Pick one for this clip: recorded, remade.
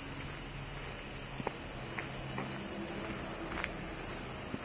recorded